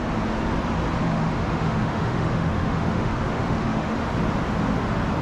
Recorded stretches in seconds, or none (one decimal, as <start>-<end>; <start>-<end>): 0.0-1.0; 4.1-5.2